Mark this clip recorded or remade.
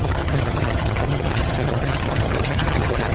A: remade